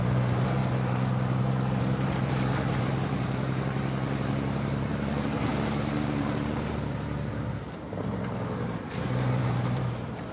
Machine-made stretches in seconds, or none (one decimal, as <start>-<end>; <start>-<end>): 0.0-10.3